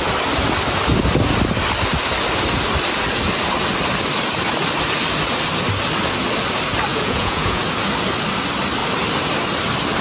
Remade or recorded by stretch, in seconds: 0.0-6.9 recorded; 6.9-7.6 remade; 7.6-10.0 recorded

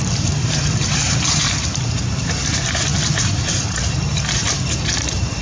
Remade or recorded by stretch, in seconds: 0.0-5.4 remade

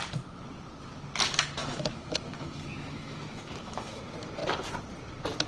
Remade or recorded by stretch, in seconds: 0.0-1.6 recorded; 1.6-4.0 remade; 4.0-5.5 recorded

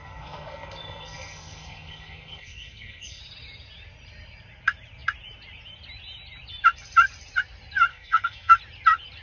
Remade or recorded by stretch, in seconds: 0.0-3.2 remade; 3.2-7.9 recorded; 7.9-8.6 remade; 8.6-9.2 recorded

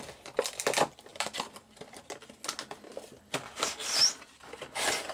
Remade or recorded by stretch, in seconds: 0.0-1.1 recorded; 1.1-2.0 remade; 2.0-5.1 recorded

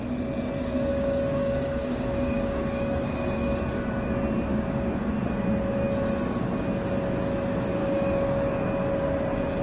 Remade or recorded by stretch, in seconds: 0.0-0.9 recorded; 0.9-3.5 remade; 3.5-4.5 recorded; 4.5-5.1 remade; 5.1-7.8 recorded; 7.8-8.5 remade; 8.5-9.6 recorded

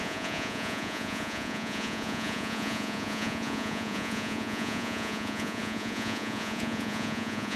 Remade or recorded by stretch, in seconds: 0.0-7.6 remade

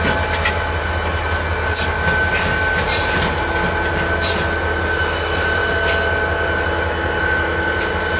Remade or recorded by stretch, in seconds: 0.0-8.2 recorded